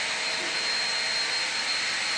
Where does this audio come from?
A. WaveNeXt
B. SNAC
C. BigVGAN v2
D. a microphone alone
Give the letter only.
D